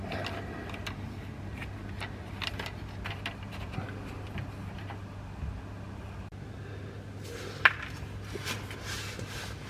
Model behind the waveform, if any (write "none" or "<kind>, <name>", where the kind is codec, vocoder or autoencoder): none